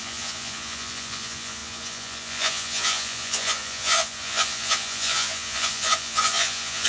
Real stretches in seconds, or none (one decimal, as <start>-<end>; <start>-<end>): none